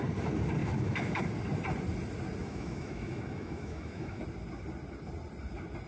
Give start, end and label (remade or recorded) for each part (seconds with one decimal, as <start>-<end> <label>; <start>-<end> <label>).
0.0-0.6 recorded; 0.6-1.2 remade; 1.2-2.4 recorded; 2.4-4.2 remade; 4.2-5.9 recorded